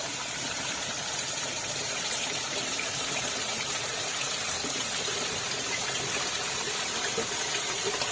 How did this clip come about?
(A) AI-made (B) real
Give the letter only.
A